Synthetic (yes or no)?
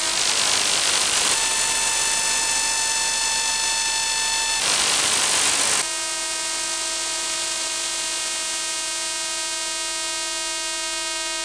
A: no